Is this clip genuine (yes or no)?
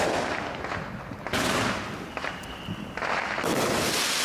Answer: yes